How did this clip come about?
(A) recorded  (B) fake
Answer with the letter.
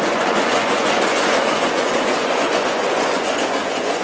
B